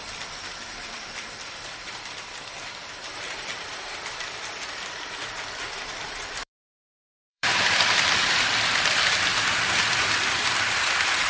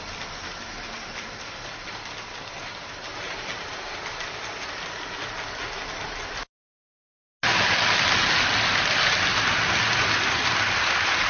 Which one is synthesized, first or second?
first